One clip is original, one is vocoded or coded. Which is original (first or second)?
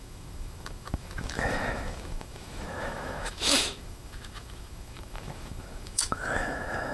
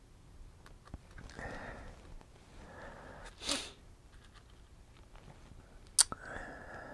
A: second